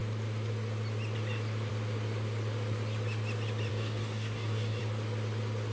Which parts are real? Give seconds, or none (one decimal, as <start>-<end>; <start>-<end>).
0.0-3.7; 4.8-5.7